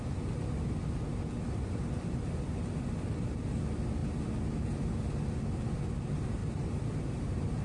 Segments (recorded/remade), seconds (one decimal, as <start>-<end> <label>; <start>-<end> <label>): 0.0-6.4 recorded; 6.4-7.0 remade; 7.0-7.6 recorded